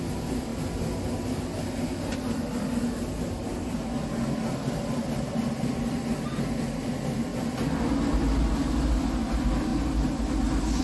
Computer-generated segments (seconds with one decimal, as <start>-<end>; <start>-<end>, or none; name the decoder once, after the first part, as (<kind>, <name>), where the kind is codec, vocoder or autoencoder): none